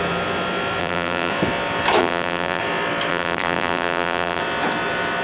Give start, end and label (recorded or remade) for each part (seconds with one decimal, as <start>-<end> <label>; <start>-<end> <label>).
0.0-0.8 recorded; 0.8-1.3 remade; 1.3-2.0 recorded; 2.0-2.6 remade; 2.6-3.1 recorded; 3.1-4.4 remade; 4.4-5.2 recorded